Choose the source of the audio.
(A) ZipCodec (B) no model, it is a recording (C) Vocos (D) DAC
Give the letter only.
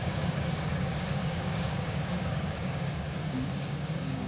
D